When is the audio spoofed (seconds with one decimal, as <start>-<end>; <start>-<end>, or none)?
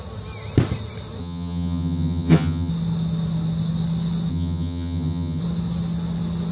1.2-2.7; 4.3-5.4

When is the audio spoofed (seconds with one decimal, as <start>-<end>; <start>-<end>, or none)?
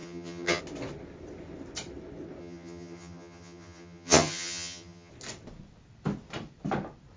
0.0-0.6; 2.4-5.1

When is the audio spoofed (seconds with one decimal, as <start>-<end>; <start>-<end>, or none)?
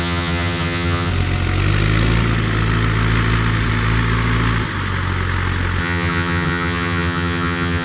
0.0-1.1; 5.8-7.8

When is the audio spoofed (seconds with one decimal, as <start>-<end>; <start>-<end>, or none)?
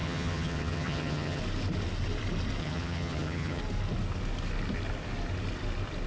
0.0-1.4; 2.6-3.6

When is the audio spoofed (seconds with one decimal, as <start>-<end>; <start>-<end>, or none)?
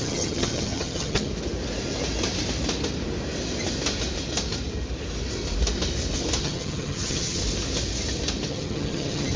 0.0-1.3; 6.4-7.4; 8.5-9.4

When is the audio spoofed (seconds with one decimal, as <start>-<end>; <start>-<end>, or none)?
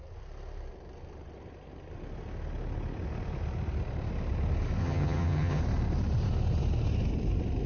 4.8-5.6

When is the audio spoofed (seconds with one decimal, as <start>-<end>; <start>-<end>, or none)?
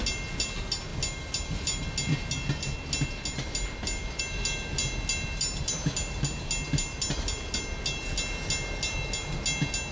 none